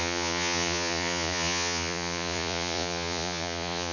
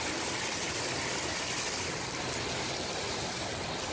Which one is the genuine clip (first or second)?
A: second